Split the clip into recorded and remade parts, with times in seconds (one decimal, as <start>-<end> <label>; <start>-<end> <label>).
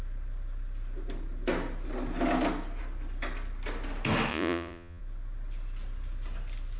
0.0-4.3 recorded; 4.3-5.0 remade; 5.0-6.8 recorded